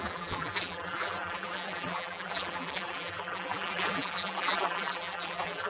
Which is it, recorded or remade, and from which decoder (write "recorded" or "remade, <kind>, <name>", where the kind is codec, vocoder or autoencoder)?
remade, vocoder, BigVGAN v2